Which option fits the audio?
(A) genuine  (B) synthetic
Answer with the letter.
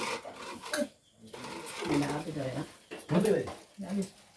A